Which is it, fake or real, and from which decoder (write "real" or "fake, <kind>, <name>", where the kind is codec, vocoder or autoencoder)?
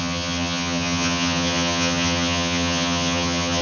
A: fake, vocoder, HiFi-GAN